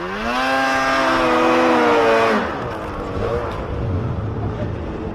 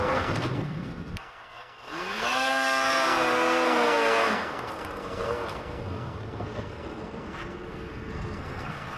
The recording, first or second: first